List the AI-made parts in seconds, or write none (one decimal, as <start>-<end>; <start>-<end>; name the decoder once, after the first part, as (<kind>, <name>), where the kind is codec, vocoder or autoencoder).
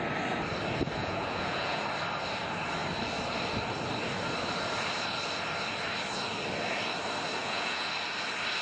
1.0-1.8 (vocoder, Vocos); 7.4-7.9